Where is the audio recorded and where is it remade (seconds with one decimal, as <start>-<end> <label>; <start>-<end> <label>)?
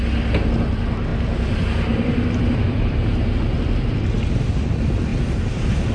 0.0-1.1 recorded; 1.1-3.1 remade; 3.1-5.1 recorded; 5.1-5.9 remade